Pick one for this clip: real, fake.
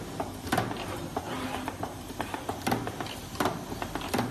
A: real